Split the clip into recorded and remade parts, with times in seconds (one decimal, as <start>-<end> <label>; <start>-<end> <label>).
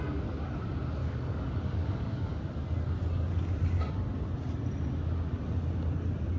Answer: 0.0-1.0 recorded; 1.0-2.5 remade; 2.5-6.4 recorded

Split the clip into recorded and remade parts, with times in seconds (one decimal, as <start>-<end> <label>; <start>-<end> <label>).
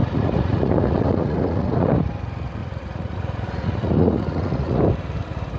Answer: 0.0-2.0 remade; 2.0-2.6 recorded; 2.6-4.8 remade; 4.8-5.6 recorded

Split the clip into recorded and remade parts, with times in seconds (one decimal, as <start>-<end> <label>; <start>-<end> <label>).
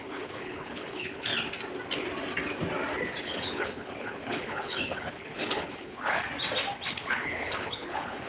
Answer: 0.0-1.3 remade; 1.3-3.2 recorded; 3.2-6.2 remade; 6.2-6.9 recorded; 6.9-8.3 remade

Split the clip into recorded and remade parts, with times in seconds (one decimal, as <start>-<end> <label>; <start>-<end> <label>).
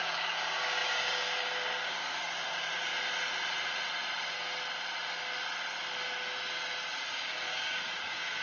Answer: 0.0-2.9 remade; 2.9-7.1 recorded; 7.1-8.4 remade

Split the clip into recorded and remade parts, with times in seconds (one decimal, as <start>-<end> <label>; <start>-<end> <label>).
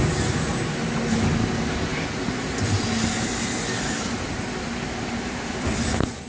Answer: 0.0-6.3 recorded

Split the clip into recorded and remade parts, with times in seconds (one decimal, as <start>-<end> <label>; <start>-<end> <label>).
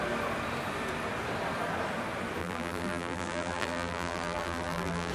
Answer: 0.0-2.4 recorded; 2.4-5.1 remade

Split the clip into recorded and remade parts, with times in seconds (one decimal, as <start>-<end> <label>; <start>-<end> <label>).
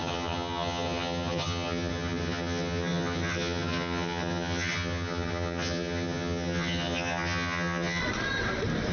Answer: 0.0-8.0 remade; 8.0-8.9 recorded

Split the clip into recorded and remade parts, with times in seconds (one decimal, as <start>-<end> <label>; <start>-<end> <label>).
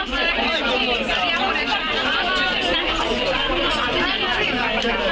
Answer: 0.0-5.1 recorded